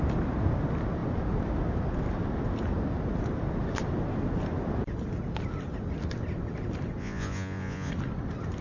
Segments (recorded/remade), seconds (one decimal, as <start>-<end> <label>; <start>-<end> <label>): 0.0-7.0 recorded; 7.0-7.9 remade; 7.9-8.6 recorded